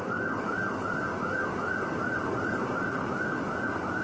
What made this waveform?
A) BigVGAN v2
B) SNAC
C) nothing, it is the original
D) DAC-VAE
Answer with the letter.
C